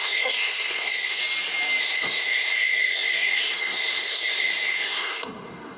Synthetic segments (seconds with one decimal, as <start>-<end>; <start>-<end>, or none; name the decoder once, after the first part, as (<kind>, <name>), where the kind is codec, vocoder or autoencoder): 0.0-1.2 (codec, SNAC); 1.8-5.8